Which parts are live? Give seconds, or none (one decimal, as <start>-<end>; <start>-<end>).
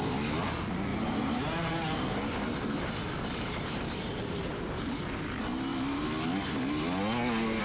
0.0-0.9; 5.0-7.6